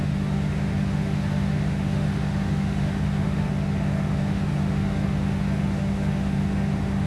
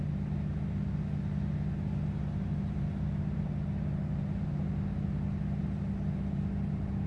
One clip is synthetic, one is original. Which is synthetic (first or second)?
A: first